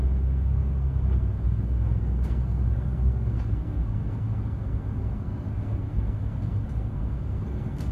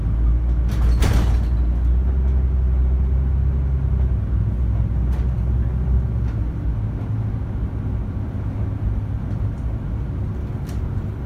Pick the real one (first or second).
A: second